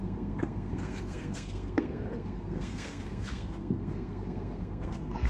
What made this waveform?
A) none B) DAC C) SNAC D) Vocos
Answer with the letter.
C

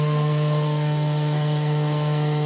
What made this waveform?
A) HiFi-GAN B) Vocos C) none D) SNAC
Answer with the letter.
D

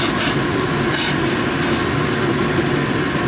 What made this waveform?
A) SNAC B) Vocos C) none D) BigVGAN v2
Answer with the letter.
C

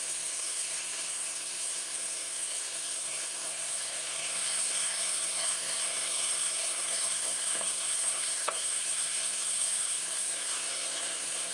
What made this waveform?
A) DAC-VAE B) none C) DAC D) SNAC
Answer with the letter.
D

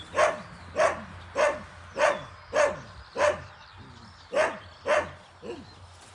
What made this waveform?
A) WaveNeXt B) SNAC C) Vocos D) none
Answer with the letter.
D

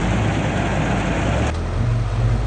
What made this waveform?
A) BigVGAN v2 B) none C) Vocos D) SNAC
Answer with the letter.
B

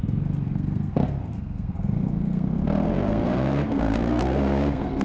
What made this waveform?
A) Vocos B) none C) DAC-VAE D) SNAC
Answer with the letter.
D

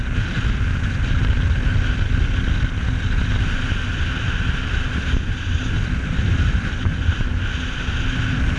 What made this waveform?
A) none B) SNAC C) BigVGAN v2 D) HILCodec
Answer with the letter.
A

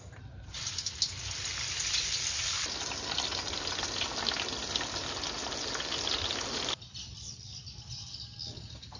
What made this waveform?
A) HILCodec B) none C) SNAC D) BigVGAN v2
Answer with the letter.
B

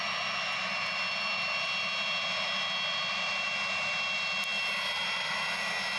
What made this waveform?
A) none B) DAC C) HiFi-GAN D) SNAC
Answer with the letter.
A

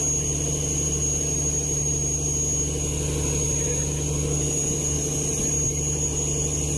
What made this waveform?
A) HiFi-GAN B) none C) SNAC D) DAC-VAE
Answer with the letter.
B